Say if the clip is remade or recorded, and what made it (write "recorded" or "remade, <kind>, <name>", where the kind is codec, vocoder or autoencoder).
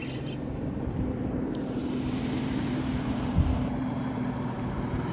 remade, vocoder, BigVGAN v2